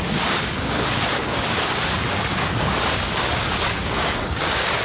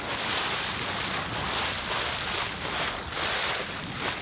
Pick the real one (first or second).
second